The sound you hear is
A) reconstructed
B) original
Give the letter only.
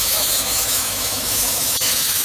A